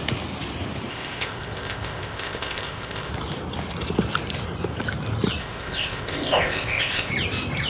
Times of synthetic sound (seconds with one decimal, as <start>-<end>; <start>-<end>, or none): 0.9-3.1; 5.4-7.1